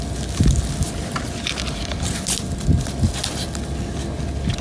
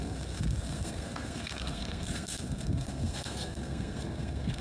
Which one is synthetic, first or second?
second